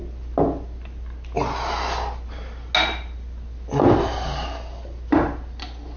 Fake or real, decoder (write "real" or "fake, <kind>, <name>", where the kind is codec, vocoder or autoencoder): real